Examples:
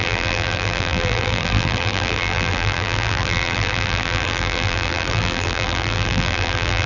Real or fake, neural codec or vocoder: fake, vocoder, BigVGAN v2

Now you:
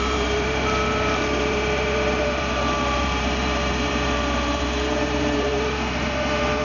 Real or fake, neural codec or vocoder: fake, vocoder, BigVGAN v2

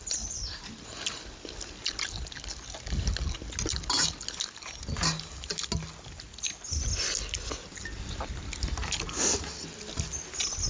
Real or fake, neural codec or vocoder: real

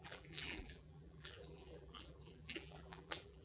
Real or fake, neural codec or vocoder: fake, vocoder, BigVGAN v2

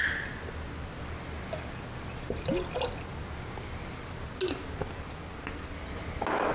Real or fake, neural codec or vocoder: real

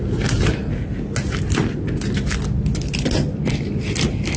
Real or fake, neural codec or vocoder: real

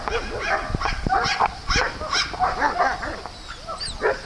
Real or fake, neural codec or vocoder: real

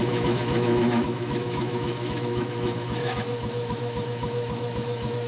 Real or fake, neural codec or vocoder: fake, autoencoder, DAC-VAE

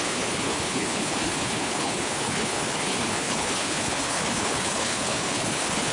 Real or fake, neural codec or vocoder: fake, codec, HILCodec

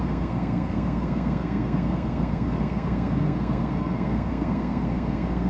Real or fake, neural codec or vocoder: fake, codec, SNAC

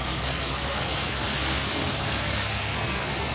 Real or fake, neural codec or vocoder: fake, codec, SNAC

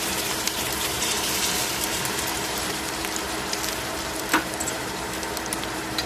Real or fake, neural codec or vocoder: fake, vocoder, BigVGAN v2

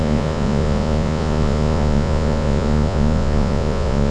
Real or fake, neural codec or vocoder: fake, vocoder, Vocos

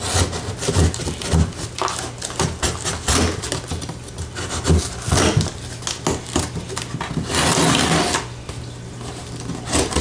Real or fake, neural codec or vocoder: real